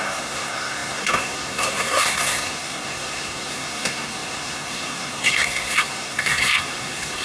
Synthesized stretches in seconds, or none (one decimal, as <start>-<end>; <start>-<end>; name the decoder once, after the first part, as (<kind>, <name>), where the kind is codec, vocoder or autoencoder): 0.0-7.2 (codec, SNAC)